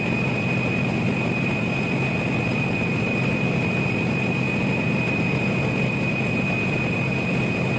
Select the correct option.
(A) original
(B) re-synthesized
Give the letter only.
A